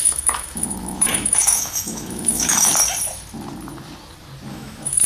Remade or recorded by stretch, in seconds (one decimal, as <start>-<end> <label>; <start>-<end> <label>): 0.0-2.7 remade; 2.7-4.5 recorded; 4.5-5.1 remade